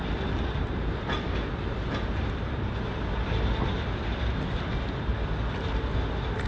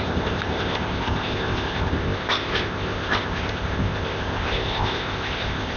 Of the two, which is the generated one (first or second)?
second